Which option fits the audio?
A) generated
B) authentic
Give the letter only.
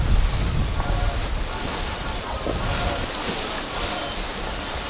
B